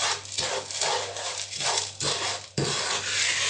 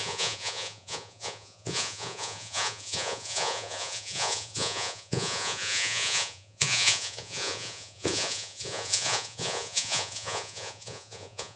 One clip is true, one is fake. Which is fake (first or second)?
second